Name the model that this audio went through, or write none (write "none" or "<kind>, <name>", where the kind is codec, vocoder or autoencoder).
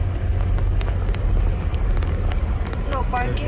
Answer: none